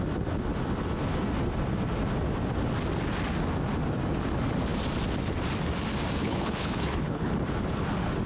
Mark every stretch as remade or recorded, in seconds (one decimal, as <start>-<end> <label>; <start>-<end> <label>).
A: 0.0-6.2 recorded; 6.2-7.3 remade; 7.3-8.3 recorded